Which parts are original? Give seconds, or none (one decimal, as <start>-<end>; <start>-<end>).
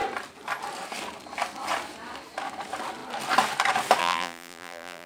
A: 0.0-4.0